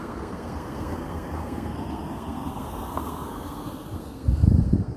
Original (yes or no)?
no